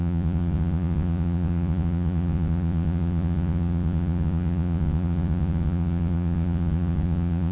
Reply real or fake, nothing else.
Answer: fake